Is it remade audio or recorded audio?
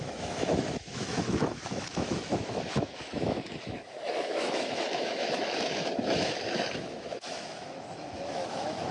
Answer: remade